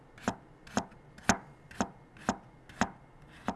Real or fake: real